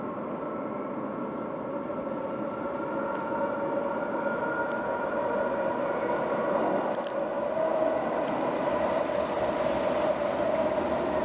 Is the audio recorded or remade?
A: recorded